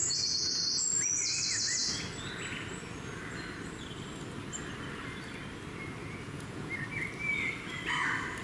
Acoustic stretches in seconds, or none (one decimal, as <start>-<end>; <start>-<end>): 0.6-6.0; 6.7-8.4